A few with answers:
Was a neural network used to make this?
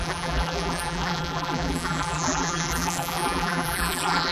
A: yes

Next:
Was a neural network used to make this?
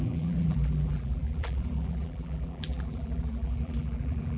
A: yes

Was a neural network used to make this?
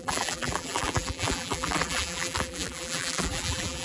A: yes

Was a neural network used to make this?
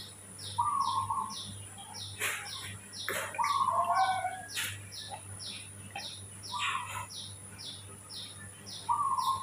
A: no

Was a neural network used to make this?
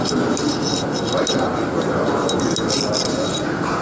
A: no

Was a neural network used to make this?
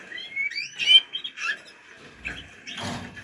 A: no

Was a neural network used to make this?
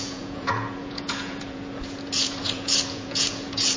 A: yes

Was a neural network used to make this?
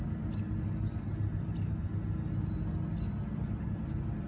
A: no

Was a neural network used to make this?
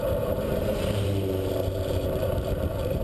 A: yes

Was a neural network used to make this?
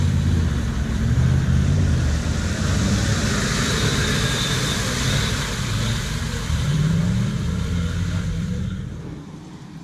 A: yes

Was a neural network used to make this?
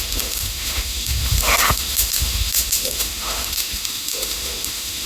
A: yes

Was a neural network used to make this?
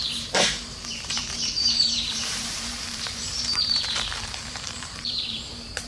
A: yes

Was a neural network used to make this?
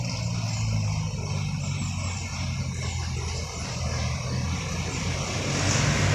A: no